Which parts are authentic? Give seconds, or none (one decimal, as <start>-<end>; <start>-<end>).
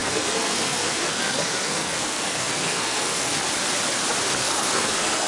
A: 3.4-4.4